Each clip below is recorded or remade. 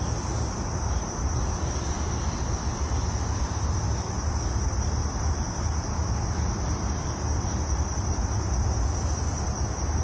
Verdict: recorded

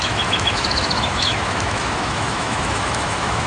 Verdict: remade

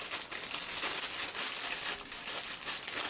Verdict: recorded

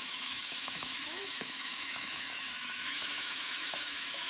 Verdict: remade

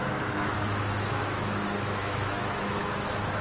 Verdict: remade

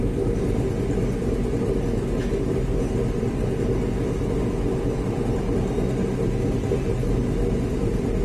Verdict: recorded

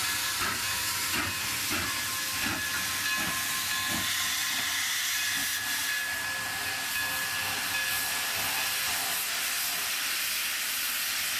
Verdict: recorded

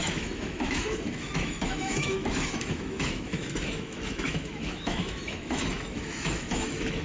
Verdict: remade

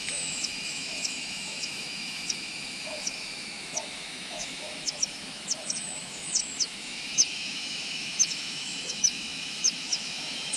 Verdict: remade